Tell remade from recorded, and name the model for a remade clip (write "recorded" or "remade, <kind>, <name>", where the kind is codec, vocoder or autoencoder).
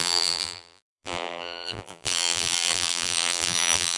remade, vocoder, BigVGAN v2